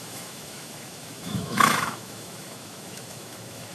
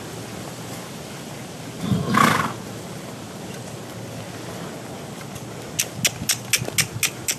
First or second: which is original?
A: second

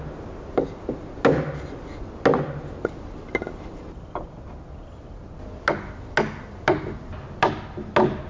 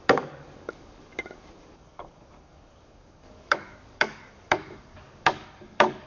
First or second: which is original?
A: first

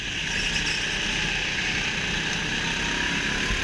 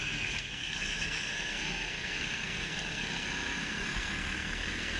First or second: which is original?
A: first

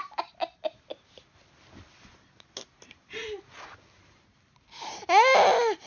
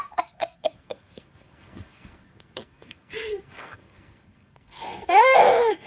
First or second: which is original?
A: first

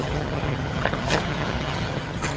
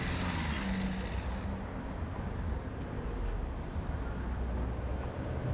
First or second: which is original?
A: second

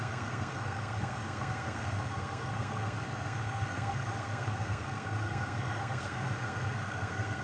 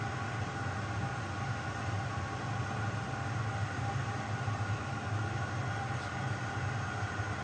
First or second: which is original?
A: second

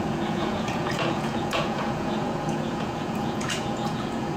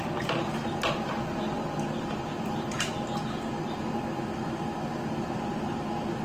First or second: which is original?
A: second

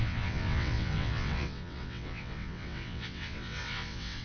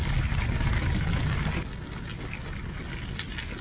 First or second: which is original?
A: second